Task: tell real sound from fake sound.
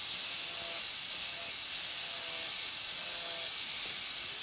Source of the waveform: real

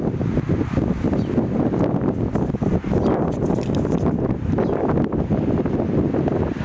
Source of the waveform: real